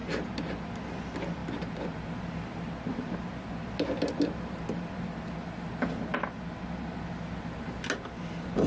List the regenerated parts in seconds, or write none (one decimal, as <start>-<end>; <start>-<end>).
none